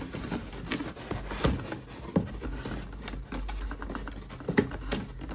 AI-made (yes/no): no